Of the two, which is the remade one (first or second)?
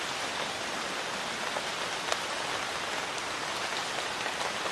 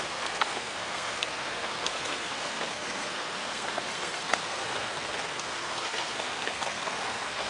second